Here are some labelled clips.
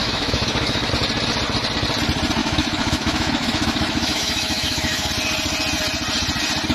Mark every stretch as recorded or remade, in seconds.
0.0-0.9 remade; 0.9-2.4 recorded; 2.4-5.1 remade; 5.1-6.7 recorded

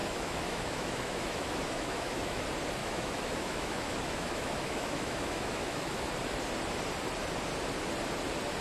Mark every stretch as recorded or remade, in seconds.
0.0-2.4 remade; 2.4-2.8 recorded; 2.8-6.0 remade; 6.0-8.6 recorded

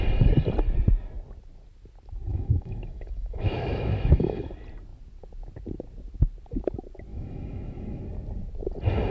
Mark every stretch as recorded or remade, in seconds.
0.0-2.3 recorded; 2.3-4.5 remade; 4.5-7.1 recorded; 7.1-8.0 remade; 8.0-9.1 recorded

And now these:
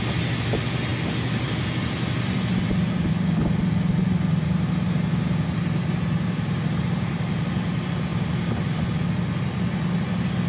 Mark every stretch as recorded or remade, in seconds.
0.0-10.5 recorded

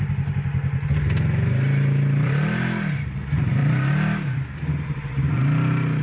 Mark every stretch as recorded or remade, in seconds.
0.0-6.0 recorded

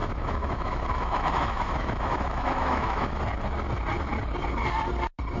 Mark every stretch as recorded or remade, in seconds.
0.0-3.2 remade; 3.2-5.4 recorded